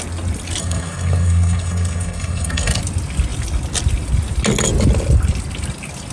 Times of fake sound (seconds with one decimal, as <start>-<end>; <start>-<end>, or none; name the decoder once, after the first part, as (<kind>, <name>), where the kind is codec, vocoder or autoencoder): 0.6-2.8 (codec, SNAC)